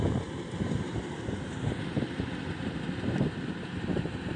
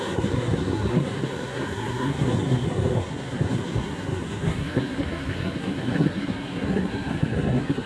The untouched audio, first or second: first